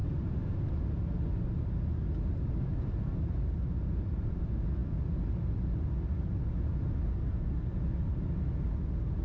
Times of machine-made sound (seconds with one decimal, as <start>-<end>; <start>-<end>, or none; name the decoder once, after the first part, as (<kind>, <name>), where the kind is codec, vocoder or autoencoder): 0.0-0.6 (vocoder, BigVGAN v2)